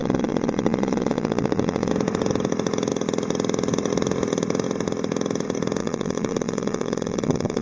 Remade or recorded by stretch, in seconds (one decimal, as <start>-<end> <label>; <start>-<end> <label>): 0.0-1.9 remade; 1.9-5.8 recorded; 5.8-7.6 remade